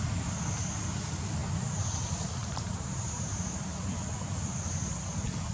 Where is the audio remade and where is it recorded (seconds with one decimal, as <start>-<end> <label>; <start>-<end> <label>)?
0.0-2.4 recorded; 2.4-3.8 remade; 3.8-5.5 recorded